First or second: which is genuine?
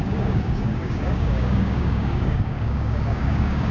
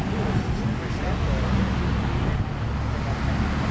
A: second